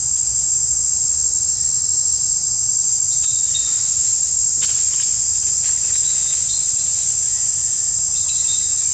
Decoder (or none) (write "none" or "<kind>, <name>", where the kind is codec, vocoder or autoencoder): vocoder, Vocos